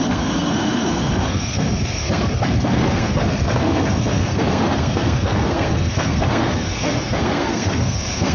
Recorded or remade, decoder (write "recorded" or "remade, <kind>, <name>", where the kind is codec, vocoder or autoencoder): remade, codec, SNAC